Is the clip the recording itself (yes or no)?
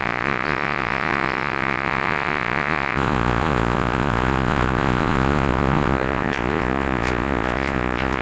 no